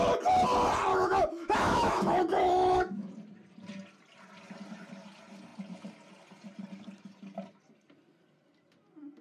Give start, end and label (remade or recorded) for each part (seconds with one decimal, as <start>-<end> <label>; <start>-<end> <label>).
0.0-0.9 recorded; 0.9-3.1 remade; 3.1-9.2 recorded